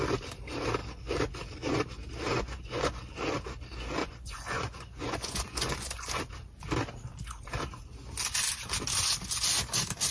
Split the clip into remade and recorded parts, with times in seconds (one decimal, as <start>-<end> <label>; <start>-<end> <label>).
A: 0.0-2.3 recorded; 2.3-3.0 remade; 3.0-4.0 recorded; 4.0-6.2 remade; 6.2-10.1 recorded